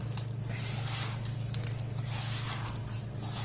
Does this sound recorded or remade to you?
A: recorded